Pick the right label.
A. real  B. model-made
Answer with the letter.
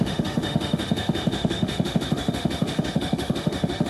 B